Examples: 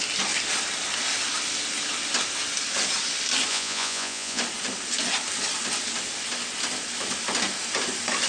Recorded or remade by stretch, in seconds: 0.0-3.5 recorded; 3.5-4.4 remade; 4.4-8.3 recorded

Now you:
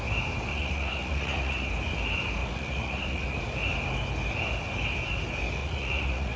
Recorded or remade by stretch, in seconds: 0.0-0.5 recorded; 0.5-1.7 remade; 1.7-2.4 recorded; 2.4-3.4 remade; 3.4-5.6 recorded; 5.6-6.4 remade

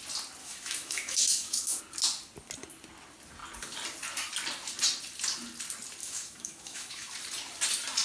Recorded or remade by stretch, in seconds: 0.0-0.4 recorded; 0.4-1.8 remade; 1.8-6.0 recorded; 6.0-7.1 remade; 7.1-8.0 recorded

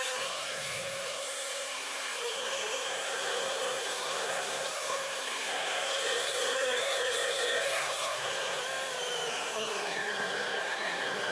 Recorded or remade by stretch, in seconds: 0.0-8.6 remade; 8.6-9.3 recorded; 9.3-11.3 remade

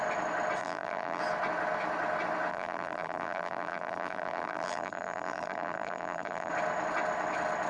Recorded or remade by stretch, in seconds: 0.0-0.6 recorded; 0.6-1.2 remade; 1.2-2.5 recorded; 2.5-6.5 remade; 6.5-7.7 recorded

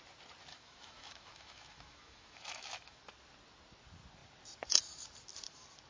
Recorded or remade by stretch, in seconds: 0.0-0.5 recorded; 0.5-3.0 remade; 3.0-5.9 recorded

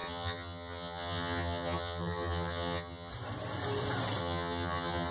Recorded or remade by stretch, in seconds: 0.0-3.1 remade; 3.1-4.2 recorded; 4.2-5.1 remade

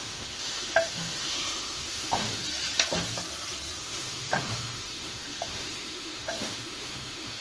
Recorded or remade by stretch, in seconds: 0.0-2.4 remade; 2.4-3.8 recorded; 3.8-7.4 remade